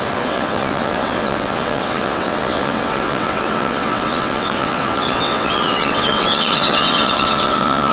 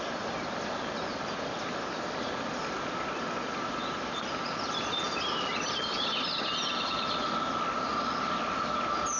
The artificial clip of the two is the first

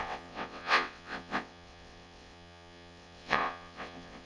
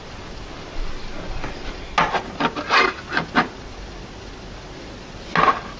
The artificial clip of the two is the first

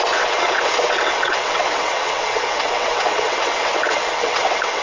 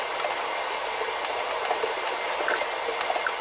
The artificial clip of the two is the first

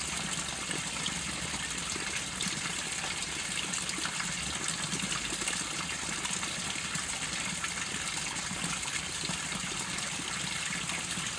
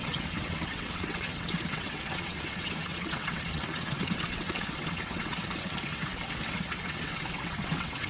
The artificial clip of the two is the second